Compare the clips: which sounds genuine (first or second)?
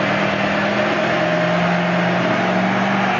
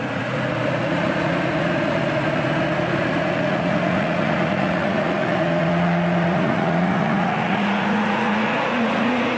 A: first